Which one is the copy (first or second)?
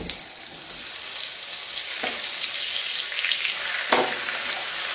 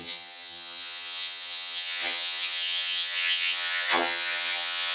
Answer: second